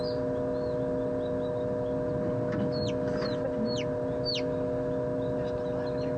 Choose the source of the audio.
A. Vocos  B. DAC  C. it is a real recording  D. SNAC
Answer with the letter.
C